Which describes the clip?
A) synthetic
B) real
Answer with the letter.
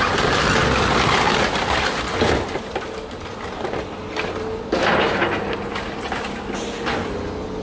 B